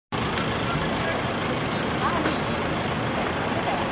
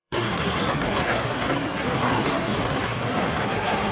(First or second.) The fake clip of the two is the second